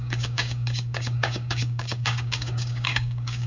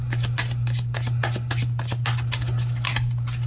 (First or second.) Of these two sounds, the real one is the second